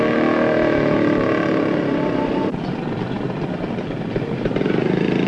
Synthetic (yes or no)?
no